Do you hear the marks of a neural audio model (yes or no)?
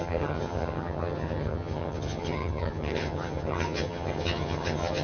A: yes